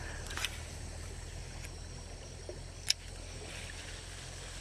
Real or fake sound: real